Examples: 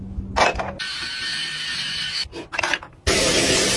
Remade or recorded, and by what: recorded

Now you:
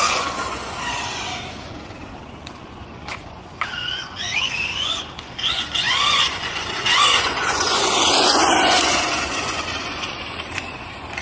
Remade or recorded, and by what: remade, vocoder, Vocos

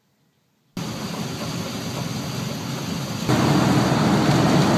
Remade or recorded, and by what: recorded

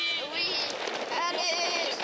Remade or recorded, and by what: recorded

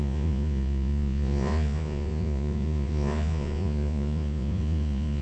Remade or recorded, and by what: remade, vocoder, Vocos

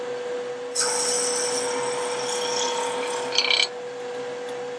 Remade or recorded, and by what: recorded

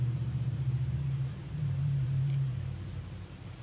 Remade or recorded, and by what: remade, vocoder, BigVGAN v2